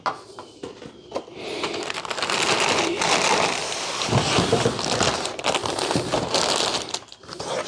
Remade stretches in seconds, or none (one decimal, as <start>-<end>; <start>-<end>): none